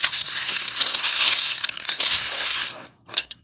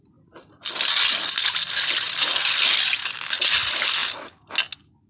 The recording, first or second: second